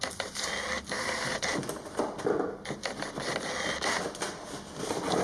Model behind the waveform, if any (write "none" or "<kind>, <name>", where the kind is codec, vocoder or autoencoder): none